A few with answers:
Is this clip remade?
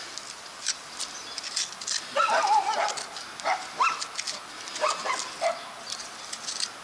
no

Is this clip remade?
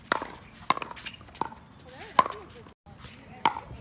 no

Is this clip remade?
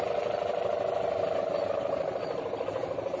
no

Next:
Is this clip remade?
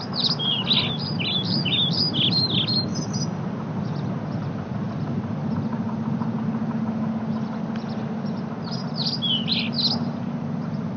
no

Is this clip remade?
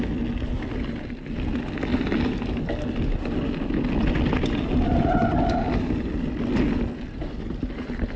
no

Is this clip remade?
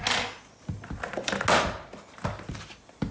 no